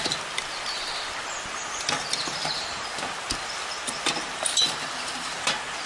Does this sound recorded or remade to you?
recorded